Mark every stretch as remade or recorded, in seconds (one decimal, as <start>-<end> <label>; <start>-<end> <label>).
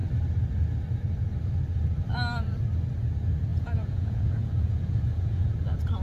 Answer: 0.0-3.5 recorded; 3.5-5.5 remade; 5.5-6.0 recorded